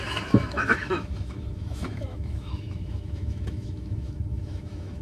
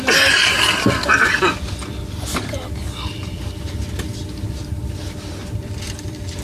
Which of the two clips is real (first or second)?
second